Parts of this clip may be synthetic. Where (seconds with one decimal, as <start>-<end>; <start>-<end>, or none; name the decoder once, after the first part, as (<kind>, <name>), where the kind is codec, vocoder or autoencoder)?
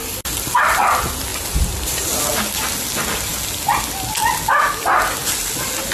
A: none